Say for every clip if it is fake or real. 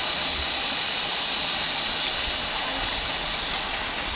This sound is real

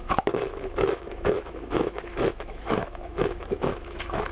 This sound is fake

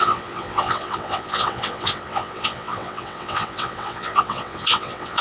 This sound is fake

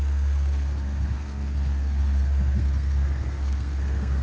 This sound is fake